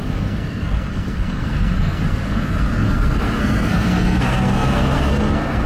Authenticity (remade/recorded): remade